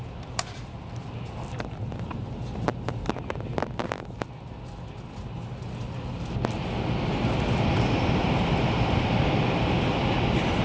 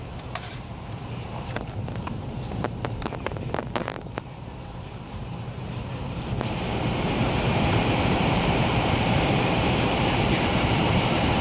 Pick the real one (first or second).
first